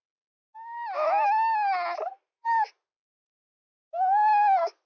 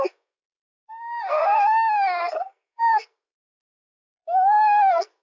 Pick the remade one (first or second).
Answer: second